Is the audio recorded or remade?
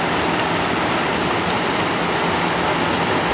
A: recorded